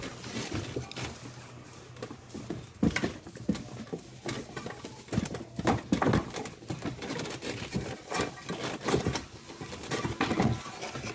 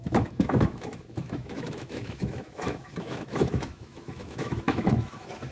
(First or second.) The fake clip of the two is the second